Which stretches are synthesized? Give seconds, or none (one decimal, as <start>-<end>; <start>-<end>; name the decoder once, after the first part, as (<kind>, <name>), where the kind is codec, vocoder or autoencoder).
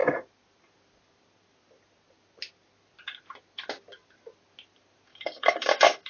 5.1-6.1 (codec, DAC)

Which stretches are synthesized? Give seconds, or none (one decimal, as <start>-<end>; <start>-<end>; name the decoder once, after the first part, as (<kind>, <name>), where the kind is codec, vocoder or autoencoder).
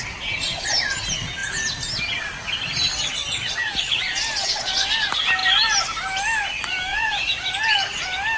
6.9-7.5 (vocoder, Vocos)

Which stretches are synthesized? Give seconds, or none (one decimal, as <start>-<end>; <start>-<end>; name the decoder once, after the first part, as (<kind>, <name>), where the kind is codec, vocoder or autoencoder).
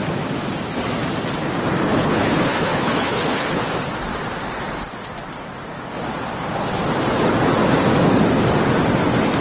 1.9-3.6 (codec, HILCodec)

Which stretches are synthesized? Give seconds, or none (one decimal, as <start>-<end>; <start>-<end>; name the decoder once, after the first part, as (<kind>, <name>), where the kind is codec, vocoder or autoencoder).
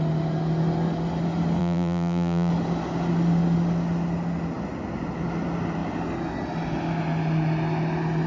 1.6-2.5 (vocoder, BigVGAN v2)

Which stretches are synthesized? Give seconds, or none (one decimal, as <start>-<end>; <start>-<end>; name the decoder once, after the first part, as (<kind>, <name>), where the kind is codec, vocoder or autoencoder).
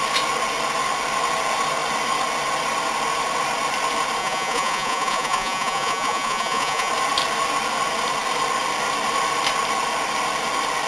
4.2-6.9 (vocoder, Vocos)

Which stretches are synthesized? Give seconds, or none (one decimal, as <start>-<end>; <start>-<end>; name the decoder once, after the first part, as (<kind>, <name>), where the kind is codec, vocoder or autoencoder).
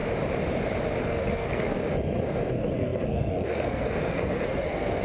1.0-1.8 (codec, SNAC); 2.5-5.0